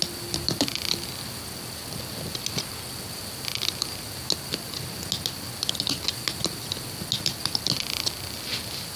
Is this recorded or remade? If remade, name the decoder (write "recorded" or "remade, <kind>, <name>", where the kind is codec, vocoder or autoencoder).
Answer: recorded